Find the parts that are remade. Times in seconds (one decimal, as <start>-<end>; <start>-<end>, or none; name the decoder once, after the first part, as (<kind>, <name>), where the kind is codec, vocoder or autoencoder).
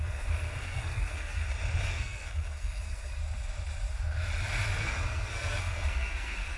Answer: 0.0-1.4 (codec, SNAC); 1.9-3.2; 4.8-6.6